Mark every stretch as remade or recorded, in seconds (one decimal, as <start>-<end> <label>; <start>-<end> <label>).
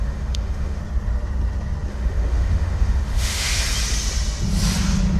0.0-0.8 remade; 0.8-1.9 recorded; 1.9-3.6 remade; 3.6-5.2 recorded